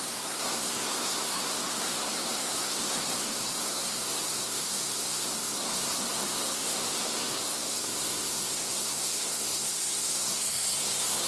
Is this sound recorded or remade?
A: remade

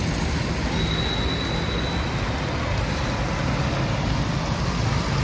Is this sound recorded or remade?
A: recorded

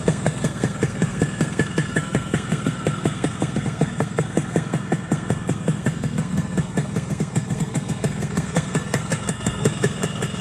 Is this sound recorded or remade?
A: remade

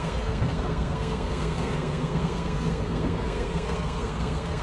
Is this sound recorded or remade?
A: remade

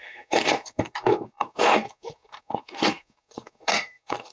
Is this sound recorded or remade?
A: remade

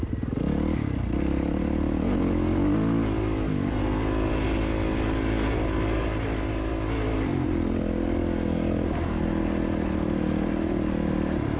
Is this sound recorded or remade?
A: recorded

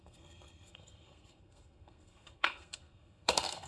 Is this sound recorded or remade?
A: remade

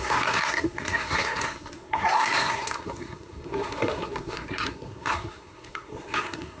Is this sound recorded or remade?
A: remade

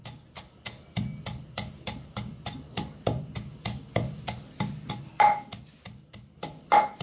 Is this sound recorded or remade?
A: recorded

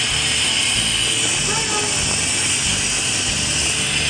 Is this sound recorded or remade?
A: recorded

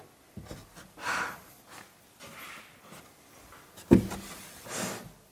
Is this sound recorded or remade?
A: recorded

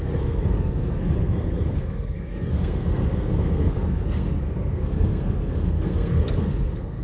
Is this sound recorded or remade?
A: remade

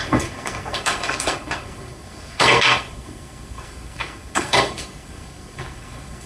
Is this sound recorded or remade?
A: remade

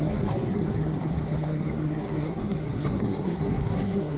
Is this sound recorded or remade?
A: remade